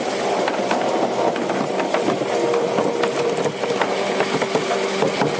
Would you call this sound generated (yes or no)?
no